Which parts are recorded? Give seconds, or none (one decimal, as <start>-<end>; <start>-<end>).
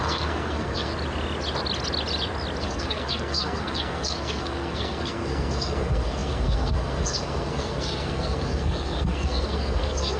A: 0.9-2.6